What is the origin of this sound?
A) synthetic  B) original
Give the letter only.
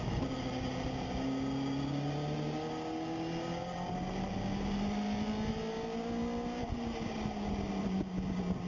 B